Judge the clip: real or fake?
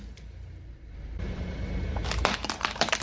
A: fake